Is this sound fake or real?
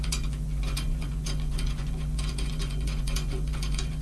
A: fake